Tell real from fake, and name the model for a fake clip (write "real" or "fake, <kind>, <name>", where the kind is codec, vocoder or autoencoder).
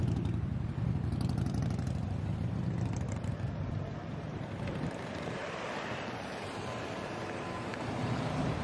fake, vocoder, BigVGAN v2